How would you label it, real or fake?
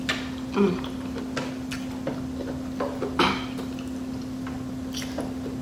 real